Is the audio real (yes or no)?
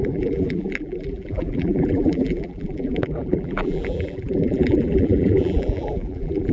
no